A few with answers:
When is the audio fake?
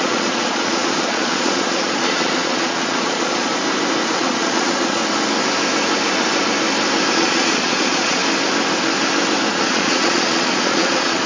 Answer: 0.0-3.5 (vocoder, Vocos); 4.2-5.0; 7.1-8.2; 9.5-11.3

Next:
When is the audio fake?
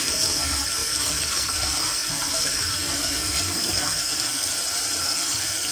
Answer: 0.0-4.5 (codec, SNAC); 5.0-5.7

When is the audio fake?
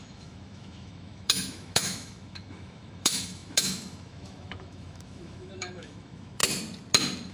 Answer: 0.0-6.4 (autoencoder, DAC-VAE)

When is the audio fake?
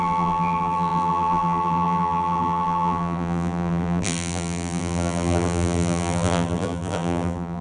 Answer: 0.0-7.6 (vocoder, BigVGAN v2)